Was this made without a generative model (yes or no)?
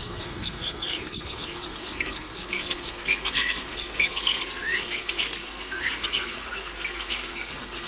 no